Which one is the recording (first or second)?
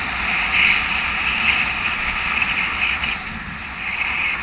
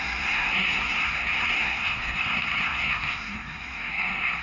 first